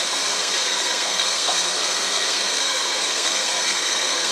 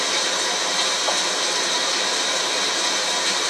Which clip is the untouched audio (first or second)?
second